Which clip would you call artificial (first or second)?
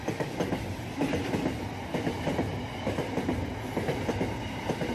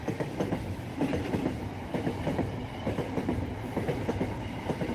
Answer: second